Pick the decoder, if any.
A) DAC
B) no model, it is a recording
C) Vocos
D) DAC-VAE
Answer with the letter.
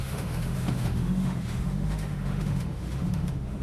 D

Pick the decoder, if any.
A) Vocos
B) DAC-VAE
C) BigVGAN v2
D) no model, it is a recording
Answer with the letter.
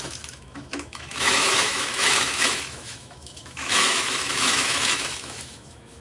B